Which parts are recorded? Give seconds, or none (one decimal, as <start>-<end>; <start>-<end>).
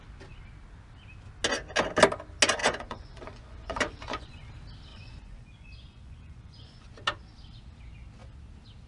0.0-2.6; 4.5-4.9; 6.9-8.9